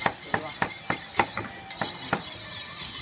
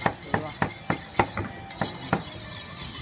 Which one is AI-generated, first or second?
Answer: first